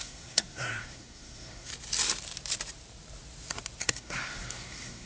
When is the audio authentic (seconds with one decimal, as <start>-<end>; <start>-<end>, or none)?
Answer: 1.7-3.8